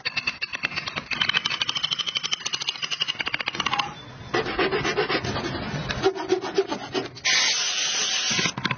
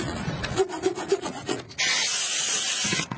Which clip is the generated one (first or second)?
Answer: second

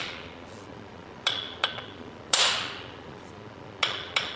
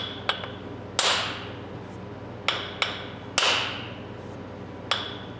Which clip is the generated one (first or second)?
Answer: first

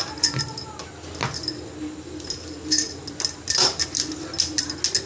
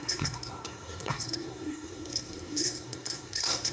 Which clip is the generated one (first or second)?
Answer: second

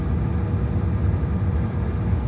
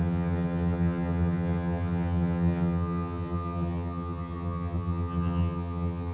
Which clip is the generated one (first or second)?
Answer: second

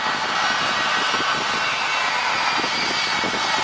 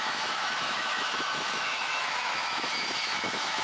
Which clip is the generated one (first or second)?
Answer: second